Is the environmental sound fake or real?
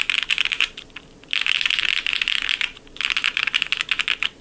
real